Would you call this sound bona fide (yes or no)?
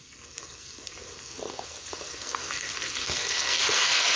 no